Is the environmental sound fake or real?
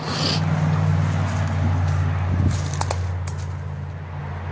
real